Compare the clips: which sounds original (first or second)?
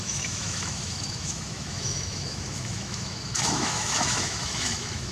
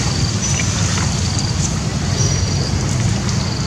second